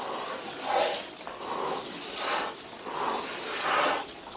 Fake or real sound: real